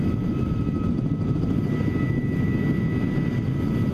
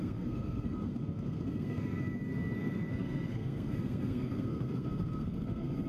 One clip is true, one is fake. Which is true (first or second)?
first